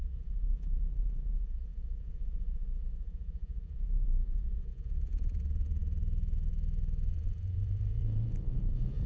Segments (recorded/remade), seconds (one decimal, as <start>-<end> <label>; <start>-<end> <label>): 0.0-9.1 remade